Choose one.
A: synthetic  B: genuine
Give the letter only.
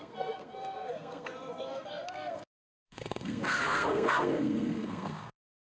A